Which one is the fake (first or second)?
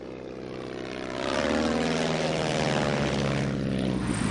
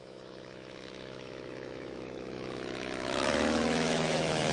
second